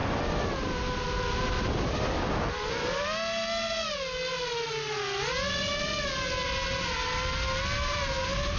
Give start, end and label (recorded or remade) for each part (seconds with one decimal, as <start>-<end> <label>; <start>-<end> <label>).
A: 0.0-8.6 recorded